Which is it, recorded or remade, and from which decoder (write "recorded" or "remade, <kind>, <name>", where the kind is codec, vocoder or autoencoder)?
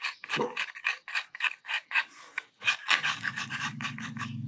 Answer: remade, codec, DAC